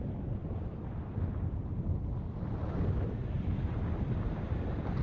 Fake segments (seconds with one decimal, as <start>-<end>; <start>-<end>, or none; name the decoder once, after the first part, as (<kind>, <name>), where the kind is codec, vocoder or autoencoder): none